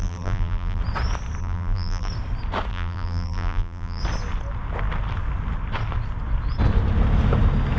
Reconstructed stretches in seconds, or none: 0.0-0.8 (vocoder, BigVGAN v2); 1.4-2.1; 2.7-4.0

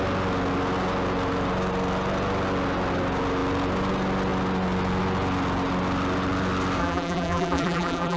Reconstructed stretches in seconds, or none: 6.8-8.2 (vocoder, BigVGAN v2)

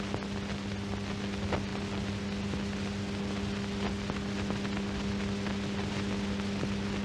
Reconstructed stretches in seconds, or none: none